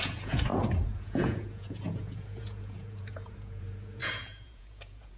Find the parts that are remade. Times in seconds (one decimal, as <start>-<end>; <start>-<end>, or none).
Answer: 0.0-5.2